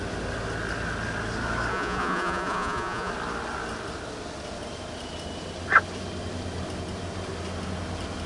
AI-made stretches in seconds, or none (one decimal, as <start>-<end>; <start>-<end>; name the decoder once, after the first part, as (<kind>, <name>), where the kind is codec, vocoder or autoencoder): 1.7-3.1 (vocoder, Vocos)